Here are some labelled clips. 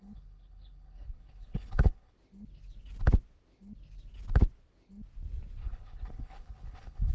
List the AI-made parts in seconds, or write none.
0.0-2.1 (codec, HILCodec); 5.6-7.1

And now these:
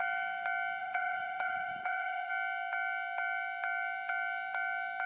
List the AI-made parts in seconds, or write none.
0.8-2.3 (vocoder, Vocos)

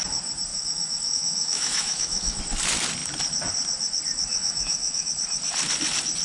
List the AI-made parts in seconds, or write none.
0.5-2.4 (autoencoder, DAC-VAE); 4.3-5.1

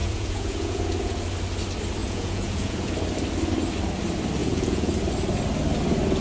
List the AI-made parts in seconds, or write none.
0.0-1.2 (vocoder, Vocos); 2.0-2.9; 4.4-4.9

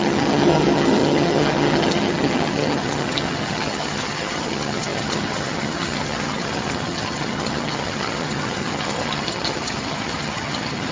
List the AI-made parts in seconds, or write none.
0.0-10.9 (vocoder, HiFi-GAN)

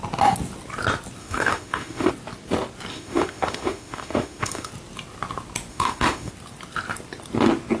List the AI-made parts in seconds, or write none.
1.2-2.1 (autoencoder, DAC-VAE); 2.9-4.7; 5.7-6.3

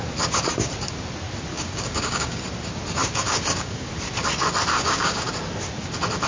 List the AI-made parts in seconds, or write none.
1.5-2.4 (codec, DAC); 3.0-3.9; 4.7-5.3

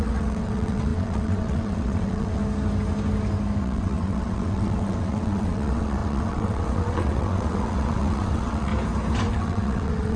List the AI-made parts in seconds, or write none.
0.0-2.4 (vocoder, WaveNeXt); 3.6-8.7; 9.3-10.2